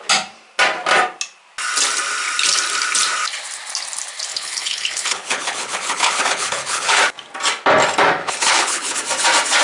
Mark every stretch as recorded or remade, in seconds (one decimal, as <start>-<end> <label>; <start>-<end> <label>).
0.0-4.3 recorded; 4.3-7.0 remade; 7.0-8.2 recorded; 8.2-9.0 remade; 9.0-9.6 recorded